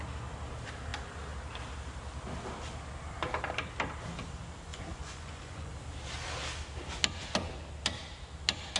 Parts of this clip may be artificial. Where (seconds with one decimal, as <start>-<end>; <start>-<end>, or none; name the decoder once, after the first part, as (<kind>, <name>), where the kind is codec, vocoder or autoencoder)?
4.7-5.7 (vocoder, Vocos)